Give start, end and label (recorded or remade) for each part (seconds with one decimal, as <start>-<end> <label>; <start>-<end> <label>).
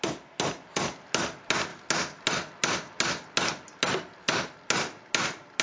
0.0-5.6 recorded